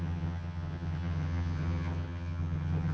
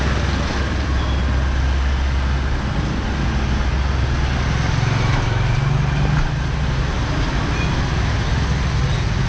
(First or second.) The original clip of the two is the second